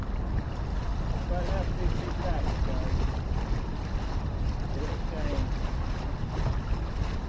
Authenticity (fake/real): real